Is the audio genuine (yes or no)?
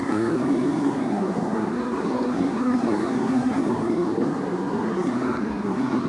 no